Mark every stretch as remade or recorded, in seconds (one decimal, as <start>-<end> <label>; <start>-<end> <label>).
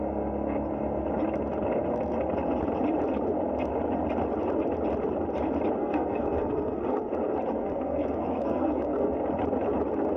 0.0-5.8 recorded; 5.8-7.1 remade; 7.1-7.6 recorded; 7.6-9.1 remade; 9.1-10.2 recorded